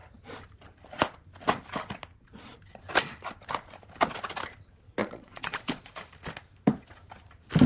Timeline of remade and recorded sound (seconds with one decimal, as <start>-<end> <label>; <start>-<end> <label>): 0.0-5.0 recorded; 5.0-6.0 remade; 6.0-7.7 recorded